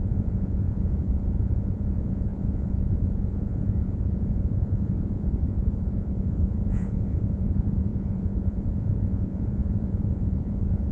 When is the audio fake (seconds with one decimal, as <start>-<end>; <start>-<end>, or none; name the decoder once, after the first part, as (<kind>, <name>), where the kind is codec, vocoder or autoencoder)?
0.0-10.9 (vocoder, Vocos)